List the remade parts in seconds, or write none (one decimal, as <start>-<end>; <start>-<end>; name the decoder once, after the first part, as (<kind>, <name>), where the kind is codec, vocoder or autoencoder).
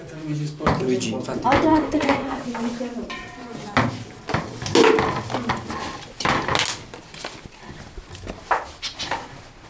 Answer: 1.7-2.4 (codec, SNAC)